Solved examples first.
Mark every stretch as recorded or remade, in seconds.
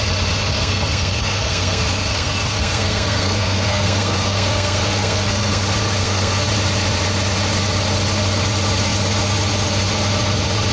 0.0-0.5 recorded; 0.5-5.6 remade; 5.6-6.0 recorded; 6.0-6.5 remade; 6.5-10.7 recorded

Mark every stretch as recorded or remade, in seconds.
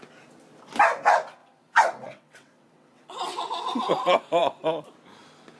0.0-1.4 recorded; 1.4-3.9 remade; 3.9-5.6 recorded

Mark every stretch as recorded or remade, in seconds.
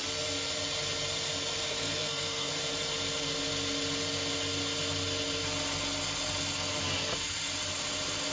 0.0-1.7 recorded; 1.7-2.5 remade; 2.5-8.3 recorded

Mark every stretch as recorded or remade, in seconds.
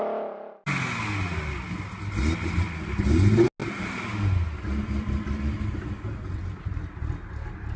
0.0-7.8 recorded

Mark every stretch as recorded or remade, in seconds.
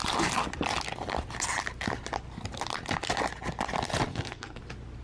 0.0-4.1 recorded; 4.1-4.6 remade; 4.6-5.0 recorded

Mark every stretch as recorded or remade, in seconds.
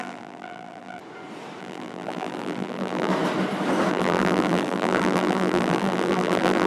0.0-1.0 remade; 1.0-1.6 recorded; 1.6-3.1 remade; 3.1-3.9 recorded; 3.9-6.7 remade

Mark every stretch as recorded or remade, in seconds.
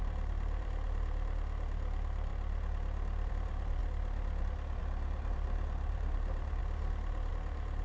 0.0-2.3 remade; 2.3-3.3 recorded; 3.3-3.8 remade; 3.8-4.8 recorded; 4.8-6.6 remade; 6.6-7.3 recorded; 7.3-7.8 remade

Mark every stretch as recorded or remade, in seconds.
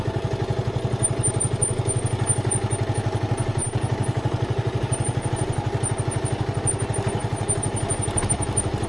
0.0-3.6 recorded; 3.6-5.3 remade; 5.3-7.2 recorded; 7.2-8.2 remade; 8.2-8.9 recorded